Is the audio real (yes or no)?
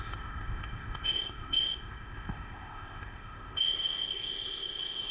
no